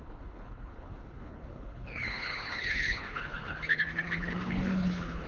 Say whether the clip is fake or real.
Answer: fake